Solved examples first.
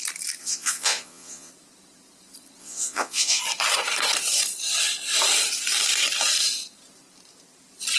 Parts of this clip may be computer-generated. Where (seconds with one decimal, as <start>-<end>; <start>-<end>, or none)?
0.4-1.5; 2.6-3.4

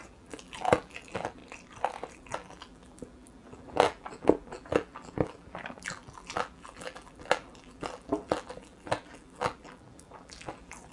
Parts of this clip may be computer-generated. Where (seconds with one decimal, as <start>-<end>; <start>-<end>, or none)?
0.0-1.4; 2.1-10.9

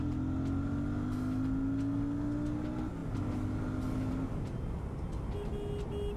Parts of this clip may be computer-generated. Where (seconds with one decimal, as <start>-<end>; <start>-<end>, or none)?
none

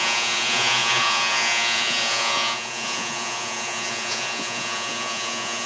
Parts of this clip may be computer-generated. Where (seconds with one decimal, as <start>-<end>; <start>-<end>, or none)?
0.0-5.7